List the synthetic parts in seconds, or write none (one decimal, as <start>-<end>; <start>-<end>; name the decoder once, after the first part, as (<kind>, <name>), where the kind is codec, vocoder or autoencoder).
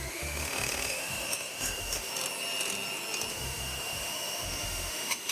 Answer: 0.0-2.1 (autoencoder, DAC-VAE); 3.3-5.3